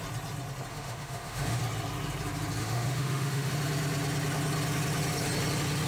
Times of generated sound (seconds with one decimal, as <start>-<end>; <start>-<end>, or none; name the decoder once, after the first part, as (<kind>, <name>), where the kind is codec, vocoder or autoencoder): 0.7-1.6 (autoencoder, DAC-VAE); 2.6-3.5